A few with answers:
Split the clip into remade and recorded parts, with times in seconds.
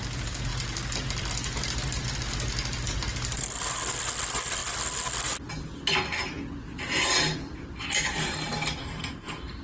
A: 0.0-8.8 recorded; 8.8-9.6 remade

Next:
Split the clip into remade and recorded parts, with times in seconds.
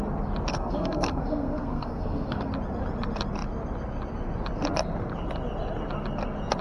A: 0.0-0.5 recorded; 0.5-2.5 remade; 2.5-6.6 recorded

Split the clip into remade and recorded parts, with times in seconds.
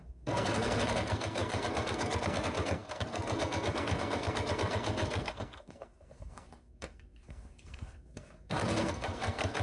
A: 0.0-9.6 remade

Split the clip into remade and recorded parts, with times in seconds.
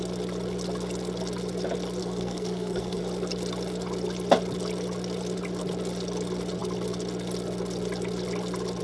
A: 0.0-2.0 recorded; 2.0-3.0 remade; 3.0-8.8 recorded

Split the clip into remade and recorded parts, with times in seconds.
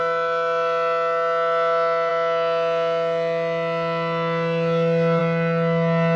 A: 0.0-6.2 recorded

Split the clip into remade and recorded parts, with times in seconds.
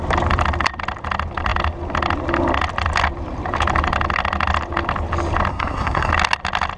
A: 0.0-5.5 recorded; 5.5-6.1 remade; 6.1-6.8 recorded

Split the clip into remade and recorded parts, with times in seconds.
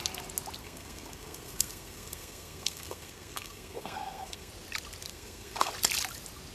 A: 0.0-0.6 recorded; 0.6-4.5 remade; 4.5-5.1 recorded; 5.1-5.7 remade; 5.7-6.5 recorded